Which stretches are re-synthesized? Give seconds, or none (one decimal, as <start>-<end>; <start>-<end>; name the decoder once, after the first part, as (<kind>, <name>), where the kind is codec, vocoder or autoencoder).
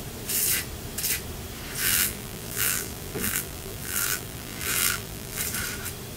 1.8-5.4 (vocoder, BigVGAN v2)